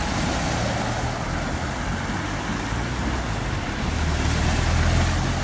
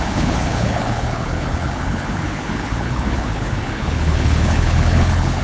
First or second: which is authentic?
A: first